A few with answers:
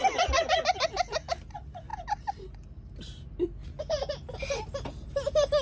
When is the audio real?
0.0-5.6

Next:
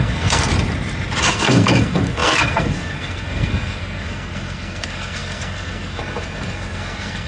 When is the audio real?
0.5-1.2